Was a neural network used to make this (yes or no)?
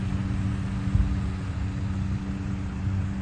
no